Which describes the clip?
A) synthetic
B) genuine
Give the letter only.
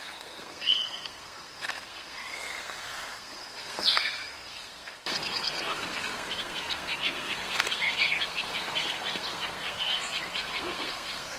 A